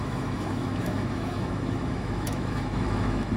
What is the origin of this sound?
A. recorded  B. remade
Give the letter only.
B